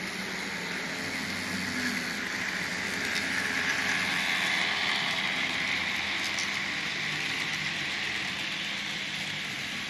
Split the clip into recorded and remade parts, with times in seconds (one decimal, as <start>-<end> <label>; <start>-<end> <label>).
0.0-9.9 recorded